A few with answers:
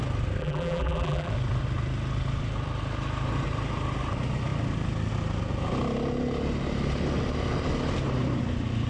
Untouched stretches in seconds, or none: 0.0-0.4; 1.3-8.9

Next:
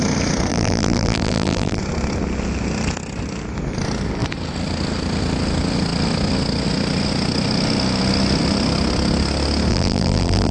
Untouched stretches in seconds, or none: 0.0-0.5; 1.8-9.7

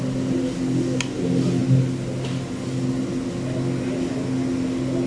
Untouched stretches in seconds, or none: 0.0-5.1

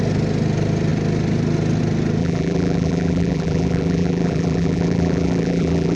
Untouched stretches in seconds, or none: 0.0-2.2

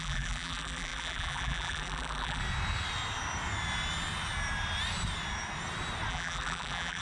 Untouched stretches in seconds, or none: 2.4-6.1

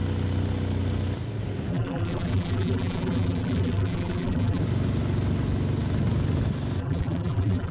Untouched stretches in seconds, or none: 0.0-1.7; 4.6-6.8